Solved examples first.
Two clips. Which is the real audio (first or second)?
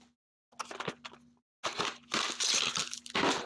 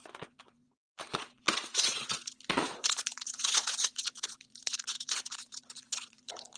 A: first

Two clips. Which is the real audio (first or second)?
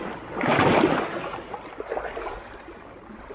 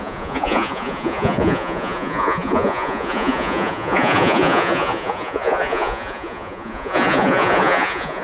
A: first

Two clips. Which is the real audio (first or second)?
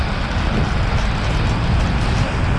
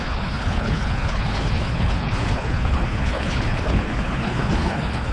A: first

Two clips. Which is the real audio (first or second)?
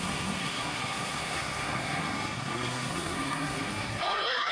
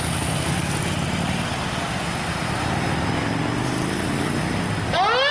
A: second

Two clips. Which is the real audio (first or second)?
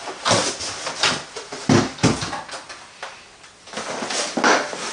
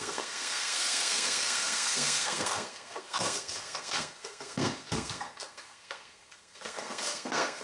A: first